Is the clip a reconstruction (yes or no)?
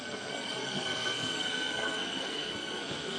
yes